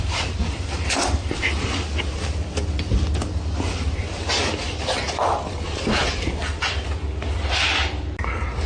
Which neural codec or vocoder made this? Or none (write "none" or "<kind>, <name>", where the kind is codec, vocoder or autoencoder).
none